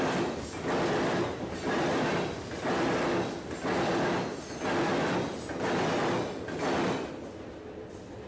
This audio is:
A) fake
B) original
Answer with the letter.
B